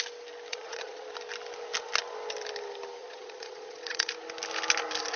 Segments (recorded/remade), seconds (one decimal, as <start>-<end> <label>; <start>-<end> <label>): 0.0-0.5 recorded; 0.5-1.1 remade; 1.1-3.0 recorded; 3.0-4.1 remade; 4.1-5.2 recorded